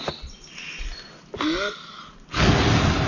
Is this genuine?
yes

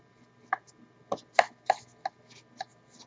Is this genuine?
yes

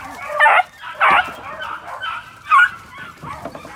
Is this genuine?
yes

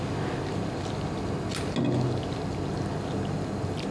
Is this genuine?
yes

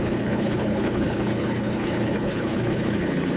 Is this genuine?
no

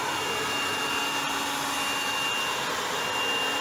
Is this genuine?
yes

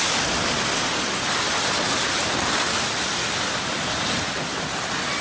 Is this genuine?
yes